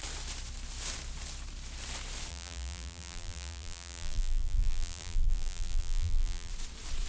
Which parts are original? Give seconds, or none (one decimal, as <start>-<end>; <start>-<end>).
0.0-2.3; 6.5-7.1